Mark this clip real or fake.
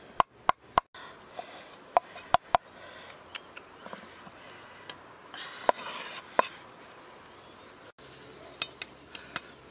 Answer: real